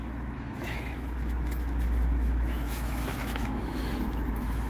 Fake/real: fake